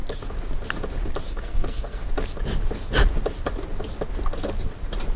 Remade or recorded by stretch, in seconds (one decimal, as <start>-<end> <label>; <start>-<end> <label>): 0.0-1.4 recorded; 1.4-2.0 remade; 2.0-5.2 recorded